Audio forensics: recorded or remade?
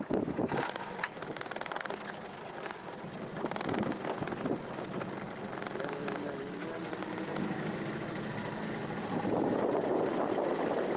recorded